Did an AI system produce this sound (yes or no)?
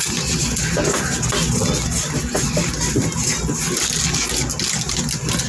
no